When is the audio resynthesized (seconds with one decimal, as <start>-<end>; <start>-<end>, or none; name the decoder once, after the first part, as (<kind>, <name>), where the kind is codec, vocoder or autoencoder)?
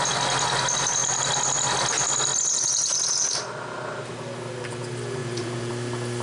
5.2-5.7 (vocoder, Vocos)